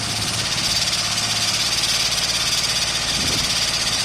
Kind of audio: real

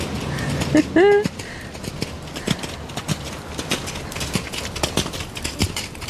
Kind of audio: real